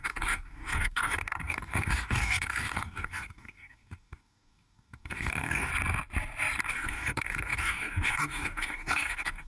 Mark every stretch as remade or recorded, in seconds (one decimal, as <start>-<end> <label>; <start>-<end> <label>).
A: 0.0-5.7 remade; 5.7-6.7 recorded; 6.7-9.5 remade